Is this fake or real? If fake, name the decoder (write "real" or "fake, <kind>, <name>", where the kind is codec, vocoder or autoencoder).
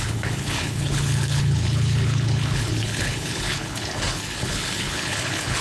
fake, codec, HILCodec